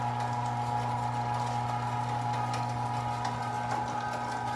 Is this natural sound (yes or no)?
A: yes